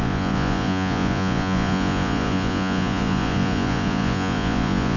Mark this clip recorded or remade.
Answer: remade